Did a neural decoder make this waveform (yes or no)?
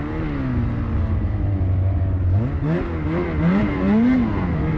no